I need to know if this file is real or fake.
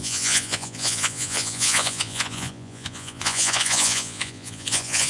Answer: fake